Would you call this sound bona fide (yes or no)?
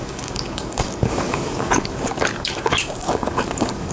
no